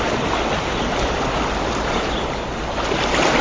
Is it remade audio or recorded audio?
recorded